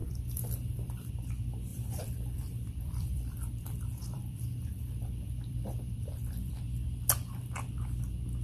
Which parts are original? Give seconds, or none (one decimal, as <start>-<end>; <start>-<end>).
1.1-1.7; 6.5-8.4